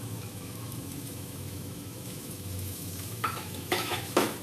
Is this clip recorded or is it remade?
remade